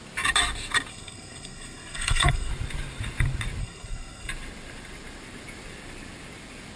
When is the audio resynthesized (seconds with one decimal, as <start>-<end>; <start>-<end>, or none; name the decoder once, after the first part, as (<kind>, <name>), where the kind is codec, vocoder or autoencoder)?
0.9-2.5 (codec, SNAC); 3.6-4.3